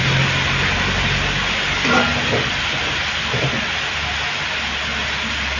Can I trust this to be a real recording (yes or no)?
yes